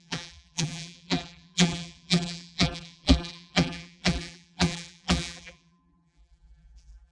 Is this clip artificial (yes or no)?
yes